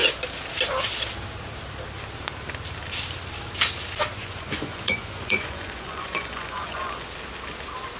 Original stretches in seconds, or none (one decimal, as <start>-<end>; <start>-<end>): 0.0-4.2; 7.1-8.0